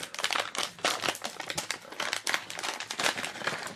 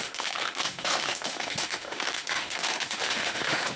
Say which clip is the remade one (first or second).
second